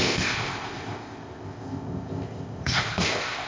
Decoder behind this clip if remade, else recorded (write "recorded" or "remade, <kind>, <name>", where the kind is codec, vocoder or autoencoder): remade, codec, ZipCodec